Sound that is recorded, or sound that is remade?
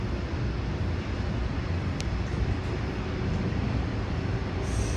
recorded